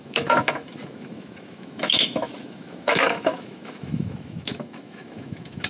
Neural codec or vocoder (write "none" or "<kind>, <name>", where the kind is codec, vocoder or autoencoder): autoencoder, DAC-VAE